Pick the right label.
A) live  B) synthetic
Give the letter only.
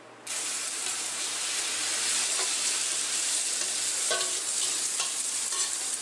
B